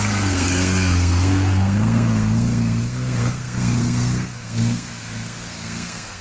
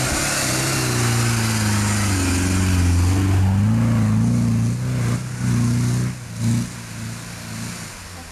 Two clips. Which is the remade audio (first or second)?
first